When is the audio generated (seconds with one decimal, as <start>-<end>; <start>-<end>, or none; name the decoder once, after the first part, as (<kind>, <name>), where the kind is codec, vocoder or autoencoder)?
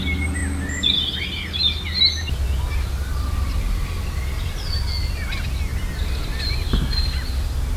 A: none